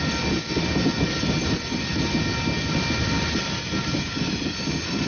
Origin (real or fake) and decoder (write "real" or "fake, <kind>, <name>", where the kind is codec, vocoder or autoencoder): real